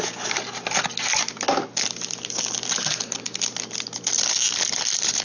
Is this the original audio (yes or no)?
yes